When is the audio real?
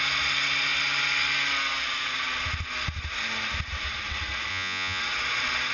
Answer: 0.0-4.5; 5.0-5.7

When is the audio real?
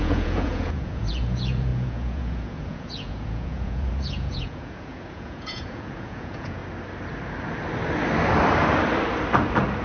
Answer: 6.6-9.8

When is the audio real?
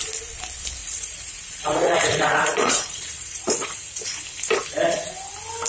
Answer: 0.0-0.8; 4.2-5.7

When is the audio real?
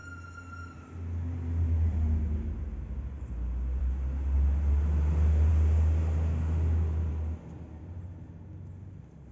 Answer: 0.0-9.3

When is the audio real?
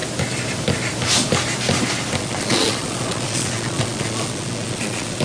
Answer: 0.0-2.2